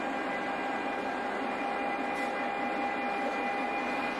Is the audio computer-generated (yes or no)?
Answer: no